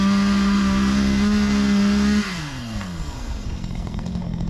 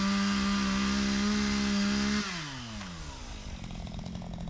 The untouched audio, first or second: second